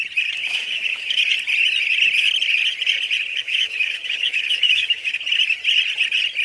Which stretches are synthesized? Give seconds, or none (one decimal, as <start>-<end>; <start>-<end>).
0.4-1.2; 3.3-5.1

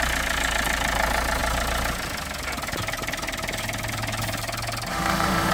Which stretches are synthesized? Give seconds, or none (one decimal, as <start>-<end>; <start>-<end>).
4.9-5.5

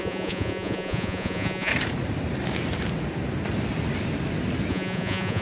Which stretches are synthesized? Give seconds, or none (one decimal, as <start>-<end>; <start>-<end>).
0.0-1.7; 4.7-5.4